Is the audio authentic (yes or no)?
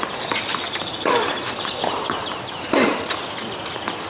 no